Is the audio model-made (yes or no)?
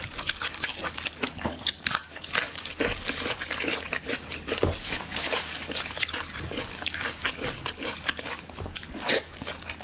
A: yes